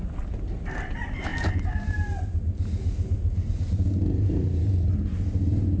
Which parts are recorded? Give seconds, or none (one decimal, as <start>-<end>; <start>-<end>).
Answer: 0.0-5.8